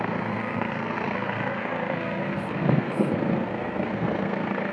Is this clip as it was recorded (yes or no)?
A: no